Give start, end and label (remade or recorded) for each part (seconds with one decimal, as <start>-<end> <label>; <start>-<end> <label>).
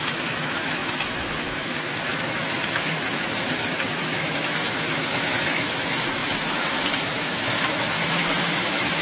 0.0-9.0 remade